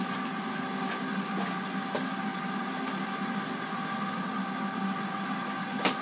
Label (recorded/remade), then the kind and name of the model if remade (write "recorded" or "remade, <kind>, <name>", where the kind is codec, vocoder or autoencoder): recorded